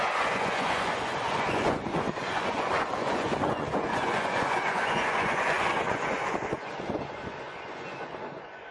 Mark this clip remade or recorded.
remade